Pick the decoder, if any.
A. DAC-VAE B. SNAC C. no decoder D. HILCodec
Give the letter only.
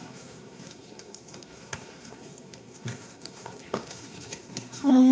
B